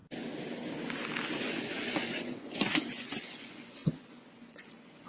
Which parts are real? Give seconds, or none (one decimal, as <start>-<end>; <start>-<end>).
0.0-1.4